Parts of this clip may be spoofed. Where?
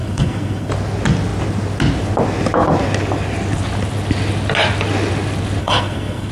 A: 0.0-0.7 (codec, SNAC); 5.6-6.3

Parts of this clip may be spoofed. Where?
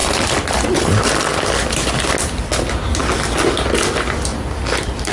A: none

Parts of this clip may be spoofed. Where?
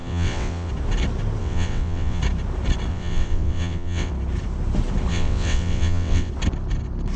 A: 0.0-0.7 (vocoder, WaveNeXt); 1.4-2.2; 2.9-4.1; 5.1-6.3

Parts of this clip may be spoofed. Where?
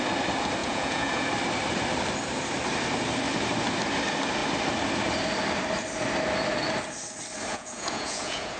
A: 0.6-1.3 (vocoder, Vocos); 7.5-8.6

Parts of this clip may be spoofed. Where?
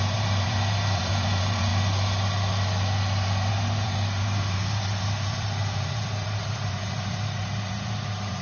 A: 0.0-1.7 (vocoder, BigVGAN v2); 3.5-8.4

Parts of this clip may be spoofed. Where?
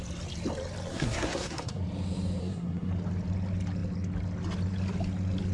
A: 0.9-1.8 (codec, SNAC); 2.4-2.9